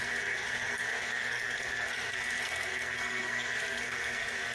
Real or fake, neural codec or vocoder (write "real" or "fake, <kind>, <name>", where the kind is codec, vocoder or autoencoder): fake, codec, SNAC